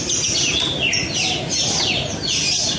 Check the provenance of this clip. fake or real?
real